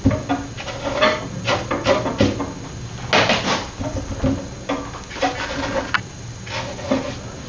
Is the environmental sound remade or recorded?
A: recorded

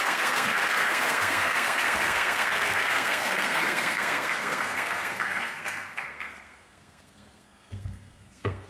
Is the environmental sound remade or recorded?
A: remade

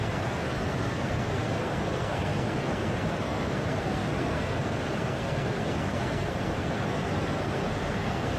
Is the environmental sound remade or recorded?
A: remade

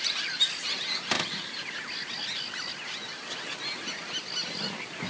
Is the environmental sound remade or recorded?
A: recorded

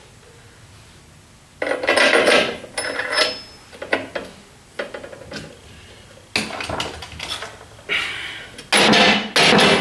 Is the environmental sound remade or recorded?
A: recorded